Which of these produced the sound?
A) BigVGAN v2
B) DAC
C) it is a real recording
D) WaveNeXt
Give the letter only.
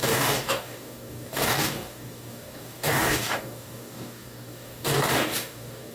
B